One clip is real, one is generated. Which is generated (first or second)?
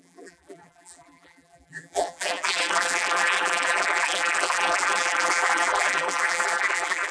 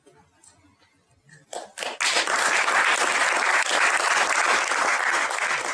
first